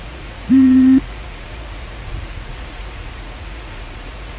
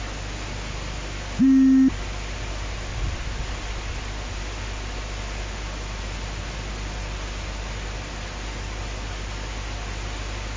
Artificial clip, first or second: first